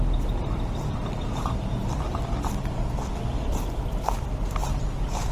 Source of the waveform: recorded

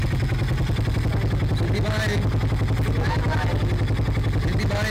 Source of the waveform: recorded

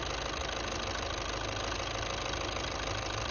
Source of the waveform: recorded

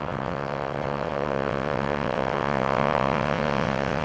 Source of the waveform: remade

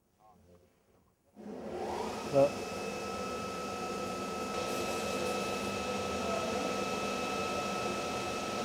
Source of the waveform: recorded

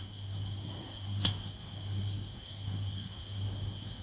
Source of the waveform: remade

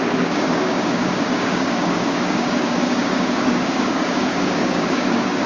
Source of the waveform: remade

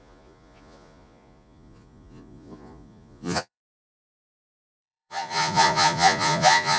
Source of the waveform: remade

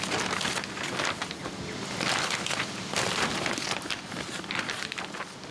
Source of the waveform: recorded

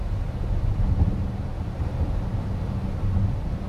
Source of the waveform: recorded